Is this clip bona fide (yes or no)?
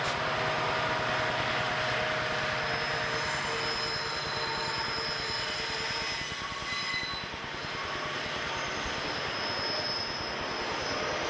yes